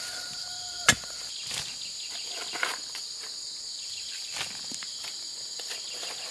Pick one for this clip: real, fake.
real